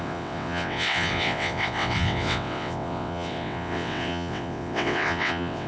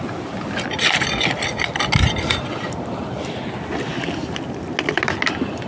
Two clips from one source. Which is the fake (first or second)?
first